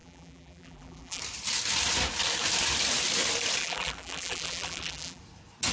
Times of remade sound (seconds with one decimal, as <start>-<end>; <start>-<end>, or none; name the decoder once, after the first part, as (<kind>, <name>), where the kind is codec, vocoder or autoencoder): 0.0-1.2 (vocoder, BigVGAN v2); 3.6-5.2

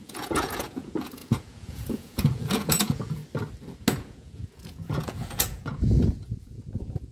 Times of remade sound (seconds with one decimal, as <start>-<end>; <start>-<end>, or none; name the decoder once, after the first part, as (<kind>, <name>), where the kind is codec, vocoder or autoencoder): 0.0-3.2 (vocoder, Vocos); 4.0-7.1

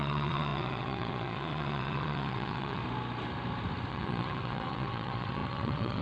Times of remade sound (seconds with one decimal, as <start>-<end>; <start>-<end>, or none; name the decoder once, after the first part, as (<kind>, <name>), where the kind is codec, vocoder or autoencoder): 0.0-2.8 (vocoder, WaveNeXt); 3.9-6.0

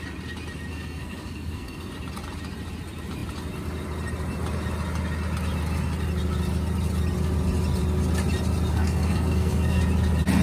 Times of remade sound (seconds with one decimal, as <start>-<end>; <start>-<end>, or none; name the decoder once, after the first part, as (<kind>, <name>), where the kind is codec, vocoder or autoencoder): 0.7-1.9 (codec, SNAC); 8.7-9.8

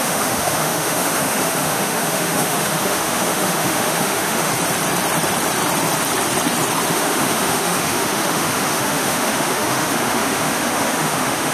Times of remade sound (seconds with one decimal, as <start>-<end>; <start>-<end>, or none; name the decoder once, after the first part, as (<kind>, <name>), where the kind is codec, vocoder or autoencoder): 0.0-4.5 (autoencoder, DAC-VAE); 6.9-11.5

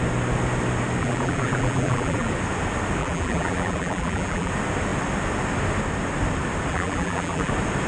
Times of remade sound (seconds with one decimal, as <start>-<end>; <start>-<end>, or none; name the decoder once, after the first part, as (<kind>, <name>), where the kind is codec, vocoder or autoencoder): 1.0-2.3 (vocoder, BigVGAN v2); 3.0-4.5; 6.7-7.5